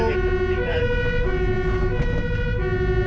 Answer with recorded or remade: recorded